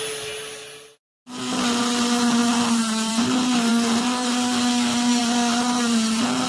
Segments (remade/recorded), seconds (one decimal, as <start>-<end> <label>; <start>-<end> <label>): 0.0-6.5 recorded